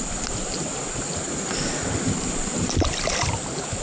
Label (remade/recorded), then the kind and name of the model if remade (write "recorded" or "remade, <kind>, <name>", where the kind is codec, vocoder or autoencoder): recorded